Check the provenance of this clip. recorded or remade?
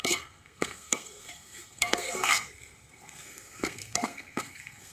remade